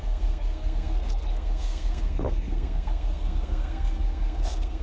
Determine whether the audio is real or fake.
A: fake